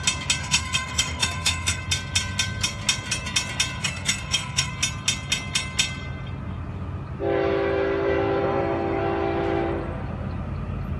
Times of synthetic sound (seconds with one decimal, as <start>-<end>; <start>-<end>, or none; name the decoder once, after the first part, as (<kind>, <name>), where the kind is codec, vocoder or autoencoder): 0.4-1.8 (codec, SNAC); 3.8-4.7; 8.4-9.0